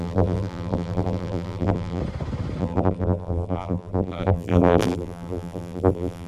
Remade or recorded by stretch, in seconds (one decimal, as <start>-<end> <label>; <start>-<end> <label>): 0.0-2.0 remade; 2.0-2.6 recorded; 2.6-6.3 remade